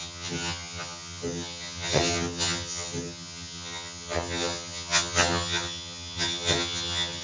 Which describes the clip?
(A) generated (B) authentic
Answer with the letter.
A